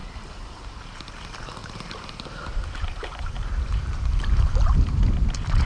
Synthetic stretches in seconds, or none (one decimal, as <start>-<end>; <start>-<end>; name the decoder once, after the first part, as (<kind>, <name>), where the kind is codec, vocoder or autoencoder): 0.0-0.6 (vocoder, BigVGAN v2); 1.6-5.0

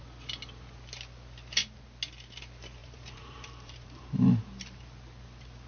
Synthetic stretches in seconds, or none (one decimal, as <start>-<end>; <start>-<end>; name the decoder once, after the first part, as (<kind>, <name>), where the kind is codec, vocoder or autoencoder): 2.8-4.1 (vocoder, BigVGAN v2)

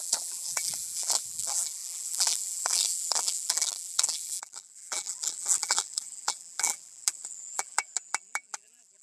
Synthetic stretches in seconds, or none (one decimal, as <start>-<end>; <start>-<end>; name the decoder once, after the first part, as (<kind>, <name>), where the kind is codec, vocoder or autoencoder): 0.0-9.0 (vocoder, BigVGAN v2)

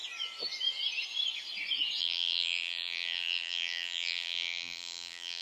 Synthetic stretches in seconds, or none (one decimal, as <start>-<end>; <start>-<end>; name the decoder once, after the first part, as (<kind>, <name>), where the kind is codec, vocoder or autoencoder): 2.0-5.4 (vocoder, BigVGAN v2)

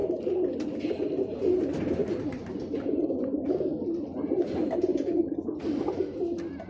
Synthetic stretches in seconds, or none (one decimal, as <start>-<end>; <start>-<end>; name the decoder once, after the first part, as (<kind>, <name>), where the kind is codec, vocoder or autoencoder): 0.0-0.9 (vocoder, BigVGAN v2); 4.9-5.8

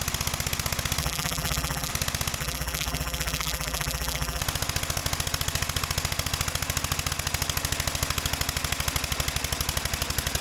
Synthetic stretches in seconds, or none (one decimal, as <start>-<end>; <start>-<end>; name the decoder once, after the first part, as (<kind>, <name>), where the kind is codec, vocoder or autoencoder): 1.0-1.9 (vocoder, BigVGAN v2); 2.4-4.4

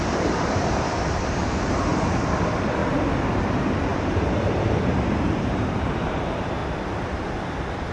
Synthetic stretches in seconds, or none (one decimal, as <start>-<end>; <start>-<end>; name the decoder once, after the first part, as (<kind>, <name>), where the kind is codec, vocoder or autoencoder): 0.0-1.9 (vocoder, BigVGAN v2); 2.4-2.8; 3.4-6.6